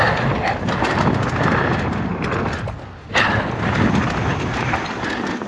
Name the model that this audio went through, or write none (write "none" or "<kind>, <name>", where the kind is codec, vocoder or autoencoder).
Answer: none